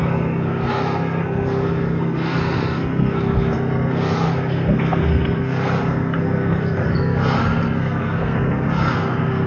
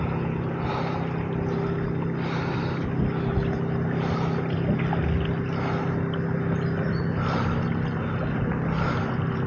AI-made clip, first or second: first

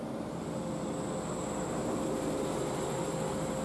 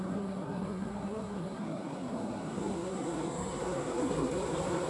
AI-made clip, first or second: second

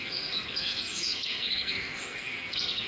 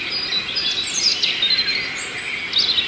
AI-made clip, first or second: first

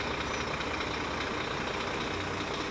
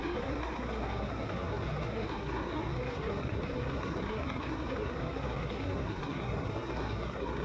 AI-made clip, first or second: second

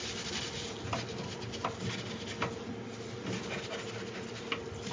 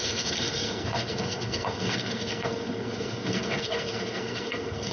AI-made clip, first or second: second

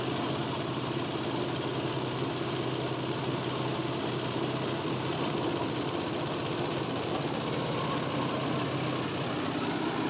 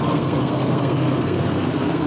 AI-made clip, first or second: second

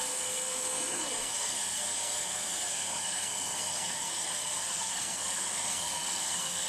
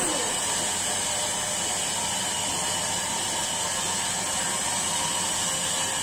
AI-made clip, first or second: first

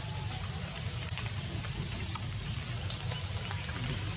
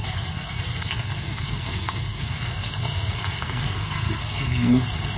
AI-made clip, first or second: second